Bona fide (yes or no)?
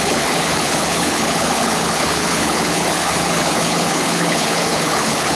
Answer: no